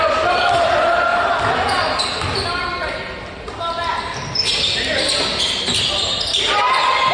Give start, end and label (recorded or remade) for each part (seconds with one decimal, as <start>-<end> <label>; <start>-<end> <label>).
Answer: 0.0-7.1 recorded